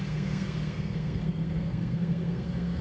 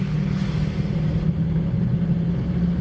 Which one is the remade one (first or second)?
first